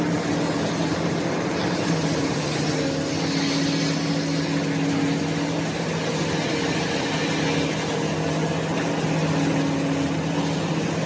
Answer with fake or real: real